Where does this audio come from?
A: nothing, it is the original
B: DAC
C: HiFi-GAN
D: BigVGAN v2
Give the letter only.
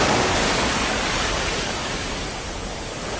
B